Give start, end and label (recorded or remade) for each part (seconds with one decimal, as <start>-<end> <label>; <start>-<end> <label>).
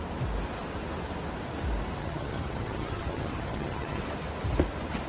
0.0-2.0 recorded; 2.0-4.0 remade; 4.0-5.1 recorded